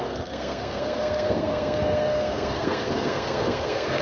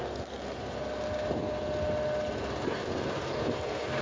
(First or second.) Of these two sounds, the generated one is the first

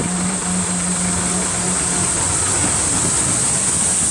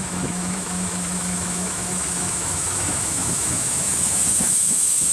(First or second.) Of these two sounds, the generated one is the second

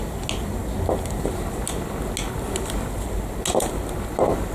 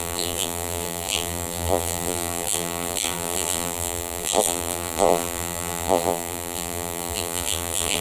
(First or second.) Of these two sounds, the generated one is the second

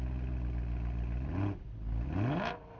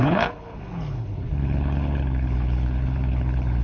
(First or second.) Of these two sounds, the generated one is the second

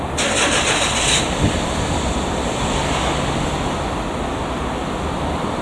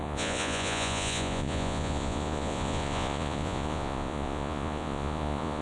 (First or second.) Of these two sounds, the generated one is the second